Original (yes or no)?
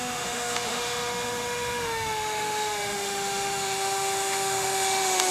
no